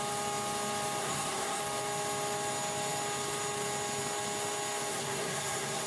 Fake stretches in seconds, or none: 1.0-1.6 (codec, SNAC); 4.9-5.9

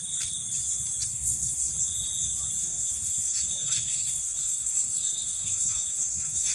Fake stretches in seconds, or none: 1.1-1.7 (codec, SNAC); 2.6-6.5

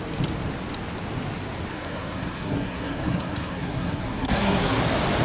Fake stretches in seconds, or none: 1.7-4.8 (codec, SNAC)